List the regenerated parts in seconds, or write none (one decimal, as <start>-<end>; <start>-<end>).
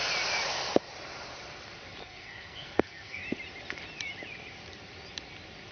2.0-3.2